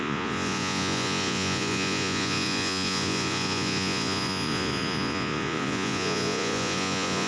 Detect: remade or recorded remade